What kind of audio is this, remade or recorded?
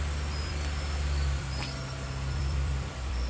remade